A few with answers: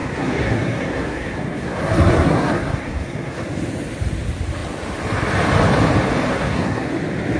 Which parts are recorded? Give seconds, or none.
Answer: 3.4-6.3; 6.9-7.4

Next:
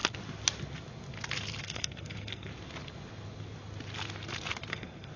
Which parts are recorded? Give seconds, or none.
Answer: 0.0-1.6; 2.5-4.7